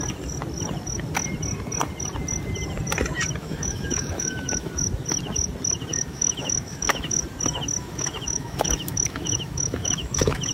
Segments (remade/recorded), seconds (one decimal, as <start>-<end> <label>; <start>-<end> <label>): 0.0-3.4 recorded; 3.4-4.7 remade; 4.7-5.9 recorded; 5.9-7.2 remade; 7.2-7.8 recorded; 7.8-10.5 remade

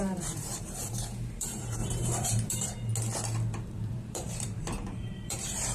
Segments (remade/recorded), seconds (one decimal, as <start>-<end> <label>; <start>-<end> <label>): 0.0-2.9 remade; 2.9-3.6 recorded; 3.6-5.7 remade

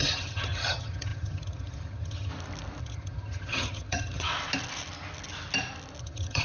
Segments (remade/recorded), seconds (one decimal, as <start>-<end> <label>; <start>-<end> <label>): 0.0-2.3 remade; 2.3-2.8 recorded; 2.8-4.3 remade; 4.3-6.0 recorded; 6.0-6.4 remade

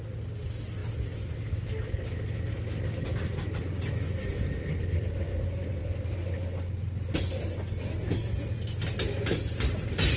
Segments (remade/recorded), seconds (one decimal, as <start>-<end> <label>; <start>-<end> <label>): 0.0-10.2 recorded

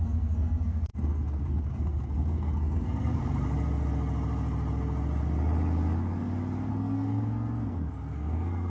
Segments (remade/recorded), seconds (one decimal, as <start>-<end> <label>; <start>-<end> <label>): 0.0-3.2 remade; 3.2-6.7 recorded; 6.7-8.7 remade

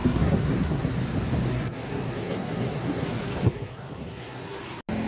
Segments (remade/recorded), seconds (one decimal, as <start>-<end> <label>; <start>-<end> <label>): 0.0-0.9 remade; 0.9-1.5 recorded; 1.5-4.6 remade; 4.6-5.1 recorded